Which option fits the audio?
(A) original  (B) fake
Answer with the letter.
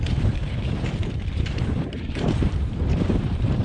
B